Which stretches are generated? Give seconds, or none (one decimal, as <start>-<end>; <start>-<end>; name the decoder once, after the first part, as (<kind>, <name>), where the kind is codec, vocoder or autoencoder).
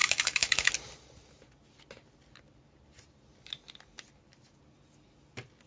0.0-0.7 (autoencoder, DAC-VAE)